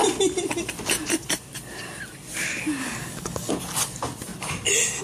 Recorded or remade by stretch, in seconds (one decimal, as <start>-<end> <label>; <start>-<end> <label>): 0.0-2.8 recorded; 2.8-3.5 remade; 3.5-5.0 recorded

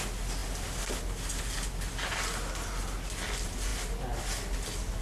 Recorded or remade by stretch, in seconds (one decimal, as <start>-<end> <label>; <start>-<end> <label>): 0.0-5.0 recorded

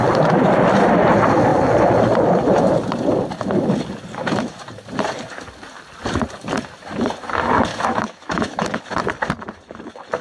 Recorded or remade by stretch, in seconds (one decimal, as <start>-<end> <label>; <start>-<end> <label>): 0.0-7.7 recorded; 7.7-8.8 remade; 8.8-10.2 recorded

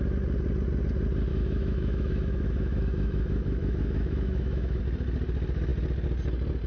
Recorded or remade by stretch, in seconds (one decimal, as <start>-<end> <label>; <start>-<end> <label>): 0.0-1.3 recorded; 1.3-4.8 remade; 4.8-6.7 recorded

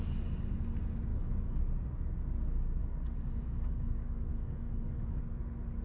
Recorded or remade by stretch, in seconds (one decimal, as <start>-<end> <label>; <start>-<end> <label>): 0.0-1.1 recorded; 1.1-1.6 remade; 1.6-2.8 recorded; 2.8-5.2 remade; 5.2-5.8 recorded

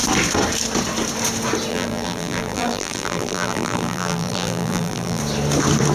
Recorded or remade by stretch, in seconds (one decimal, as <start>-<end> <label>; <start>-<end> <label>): 0.0-1.7 recorded; 1.7-5.2 remade; 5.2-5.9 recorded

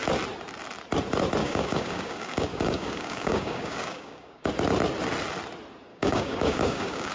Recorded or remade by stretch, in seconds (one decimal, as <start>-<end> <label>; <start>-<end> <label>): 0.0-1.4 recorded; 1.4-4.5 remade; 4.5-5.9 recorded; 5.9-7.1 remade

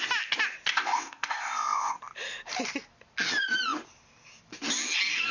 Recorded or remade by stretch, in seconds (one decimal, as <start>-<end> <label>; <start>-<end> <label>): 0.0-0.7 recorded; 0.7-2.0 remade; 2.0-5.3 recorded